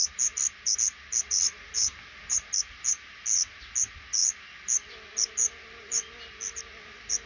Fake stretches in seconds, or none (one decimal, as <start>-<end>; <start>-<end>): none